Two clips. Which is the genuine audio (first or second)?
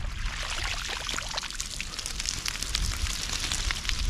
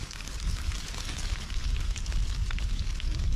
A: first